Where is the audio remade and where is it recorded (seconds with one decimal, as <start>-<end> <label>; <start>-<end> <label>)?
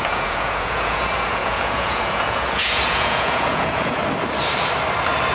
0.0-4.0 remade; 4.0-5.3 recorded